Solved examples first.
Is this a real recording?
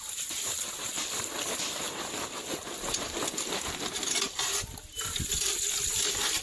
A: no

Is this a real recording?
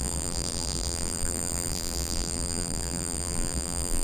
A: no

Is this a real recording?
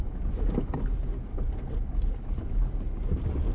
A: yes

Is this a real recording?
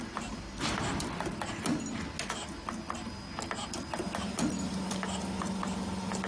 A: yes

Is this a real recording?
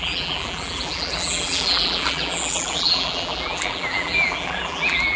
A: no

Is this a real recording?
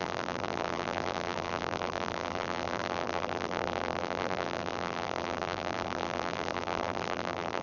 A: no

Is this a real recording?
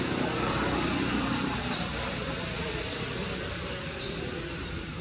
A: no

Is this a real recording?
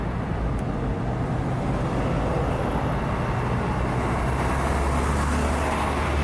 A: yes